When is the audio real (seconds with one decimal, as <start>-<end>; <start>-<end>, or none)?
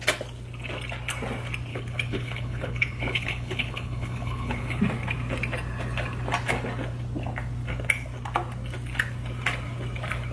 0.0-1.7; 4.8-10.3